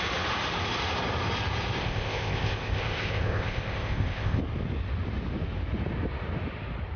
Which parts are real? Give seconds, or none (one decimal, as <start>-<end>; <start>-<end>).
0.0-1.8; 4.4-7.0